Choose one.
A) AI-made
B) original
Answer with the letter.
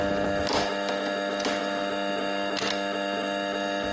B